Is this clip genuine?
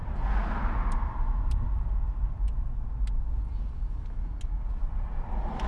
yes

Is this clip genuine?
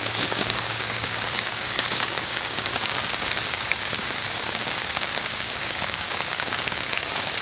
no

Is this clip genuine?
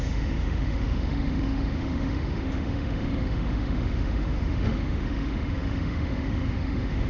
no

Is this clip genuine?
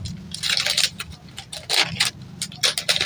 yes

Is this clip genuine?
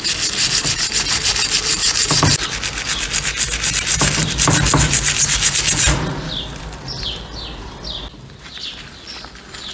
yes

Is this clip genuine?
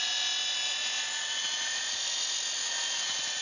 yes